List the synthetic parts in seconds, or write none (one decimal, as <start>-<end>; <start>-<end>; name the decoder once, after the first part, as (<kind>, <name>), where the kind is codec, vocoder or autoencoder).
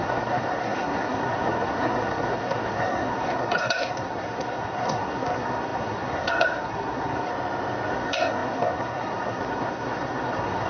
0.0-7.3 (codec, SNAC); 7.9-10.7